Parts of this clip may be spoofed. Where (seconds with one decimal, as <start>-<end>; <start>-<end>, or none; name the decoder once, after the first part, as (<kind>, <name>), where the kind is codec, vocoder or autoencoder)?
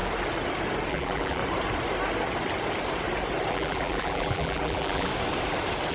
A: 0.9-1.4 (vocoder, BigVGAN v2); 3.5-5.1